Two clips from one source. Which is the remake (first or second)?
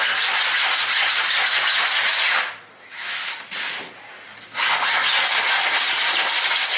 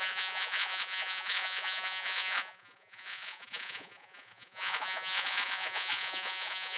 second